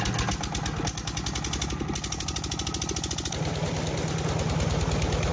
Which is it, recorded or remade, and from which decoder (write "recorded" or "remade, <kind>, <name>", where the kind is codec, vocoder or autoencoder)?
recorded